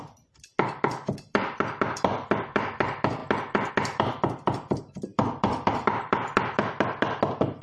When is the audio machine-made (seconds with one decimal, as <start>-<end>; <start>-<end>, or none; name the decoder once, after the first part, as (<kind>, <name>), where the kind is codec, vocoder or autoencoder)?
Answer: 0.0-3.2 (vocoder, BigVGAN v2); 3.7-7.6